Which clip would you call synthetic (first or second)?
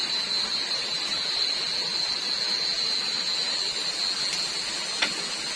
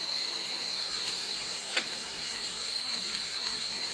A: second